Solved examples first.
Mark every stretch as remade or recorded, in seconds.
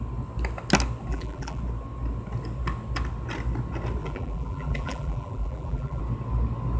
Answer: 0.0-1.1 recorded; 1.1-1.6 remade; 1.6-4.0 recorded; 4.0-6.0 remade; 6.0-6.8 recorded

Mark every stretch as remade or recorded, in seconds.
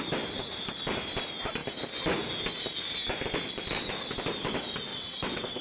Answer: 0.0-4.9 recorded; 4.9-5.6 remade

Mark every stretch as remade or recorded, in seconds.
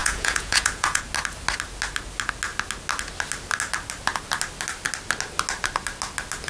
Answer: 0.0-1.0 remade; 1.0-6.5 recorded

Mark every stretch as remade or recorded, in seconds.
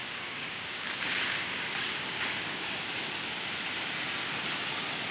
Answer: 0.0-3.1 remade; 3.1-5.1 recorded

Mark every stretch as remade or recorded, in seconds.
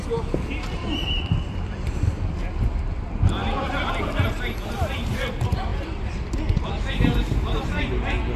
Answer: 0.0-8.4 recorded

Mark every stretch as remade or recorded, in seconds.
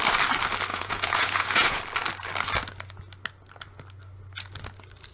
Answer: 0.0-0.7 recorded; 0.7-1.8 remade; 1.8-5.1 recorded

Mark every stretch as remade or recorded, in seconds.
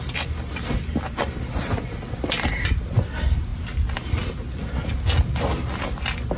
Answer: 0.0-6.4 recorded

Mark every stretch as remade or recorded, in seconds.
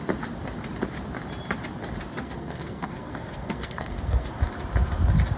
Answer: 0.0-2.2 recorded; 2.2-4.3 remade; 4.3-5.4 recorded